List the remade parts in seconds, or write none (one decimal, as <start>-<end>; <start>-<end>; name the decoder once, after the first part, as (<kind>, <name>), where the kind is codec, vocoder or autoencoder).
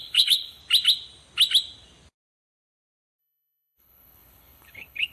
0.0-0.6 (codec, HILCodec); 3.2-5.1